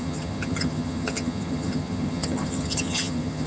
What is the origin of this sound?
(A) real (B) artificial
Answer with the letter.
B